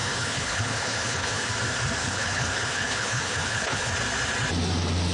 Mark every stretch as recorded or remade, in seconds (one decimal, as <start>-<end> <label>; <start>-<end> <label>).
0.0-1.5 remade; 1.5-2.0 recorded; 2.0-3.9 remade; 3.9-5.1 recorded